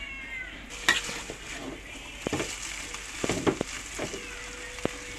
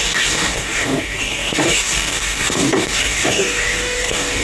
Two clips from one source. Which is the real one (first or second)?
first